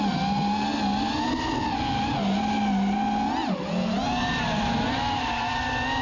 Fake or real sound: real